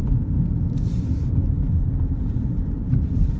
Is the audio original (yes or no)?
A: no